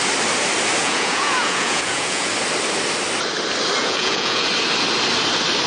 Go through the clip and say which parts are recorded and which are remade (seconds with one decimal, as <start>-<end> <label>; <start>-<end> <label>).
0.0-0.8 recorded; 0.8-2.3 remade; 2.3-3.8 recorded; 3.8-4.5 remade; 4.5-5.7 recorded